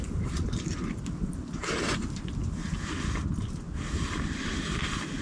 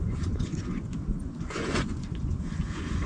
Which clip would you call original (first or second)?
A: first